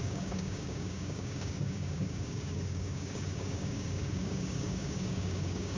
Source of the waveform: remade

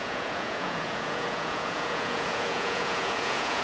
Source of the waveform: remade